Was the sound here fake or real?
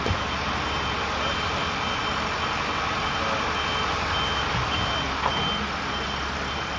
real